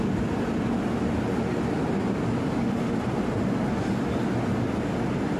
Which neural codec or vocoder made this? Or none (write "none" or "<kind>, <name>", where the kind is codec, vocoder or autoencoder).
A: none